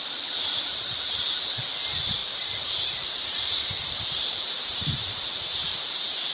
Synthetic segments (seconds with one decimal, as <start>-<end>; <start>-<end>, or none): 0.0-6.3